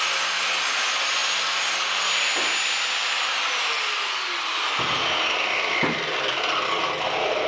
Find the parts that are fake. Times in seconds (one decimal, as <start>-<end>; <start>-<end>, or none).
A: none